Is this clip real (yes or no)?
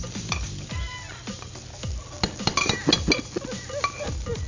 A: yes